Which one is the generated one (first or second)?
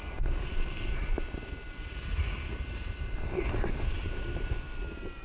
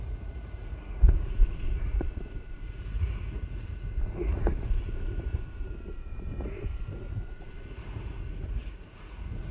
second